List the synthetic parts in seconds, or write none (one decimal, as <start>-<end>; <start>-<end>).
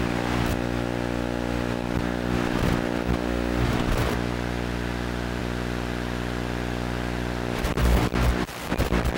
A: none